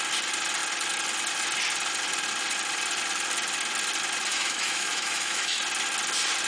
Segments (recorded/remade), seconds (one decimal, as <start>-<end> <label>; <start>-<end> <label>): 0.0-4.3 recorded; 4.3-5.6 remade; 5.6-6.5 recorded

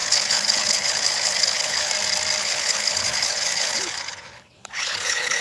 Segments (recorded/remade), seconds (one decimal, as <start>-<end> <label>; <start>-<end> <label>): 0.0-1.9 remade; 1.9-2.4 recorded; 2.4-5.4 remade

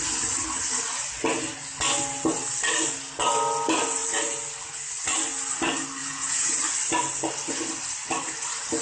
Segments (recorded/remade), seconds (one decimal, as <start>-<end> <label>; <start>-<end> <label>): 0.0-6.0 recorded; 6.0-6.5 remade; 6.5-8.8 recorded

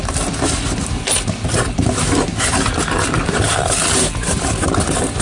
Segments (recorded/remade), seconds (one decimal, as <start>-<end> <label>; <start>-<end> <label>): 0.0-3.2 recorded; 3.2-3.8 remade; 3.8-5.2 recorded

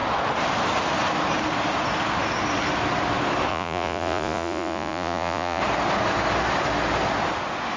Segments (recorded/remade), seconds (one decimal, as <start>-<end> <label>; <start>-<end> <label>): 0.0-3.5 recorded; 3.5-5.6 remade; 5.6-7.8 recorded

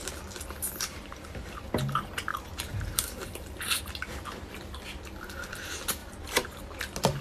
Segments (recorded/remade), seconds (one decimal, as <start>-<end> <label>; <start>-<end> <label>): 0.0-0.9 recorded; 0.9-1.7 remade; 1.7-2.3 recorded; 2.3-3.8 remade; 3.8-6.0 recorded; 6.0-6.8 remade; 6.8-7.2 recorded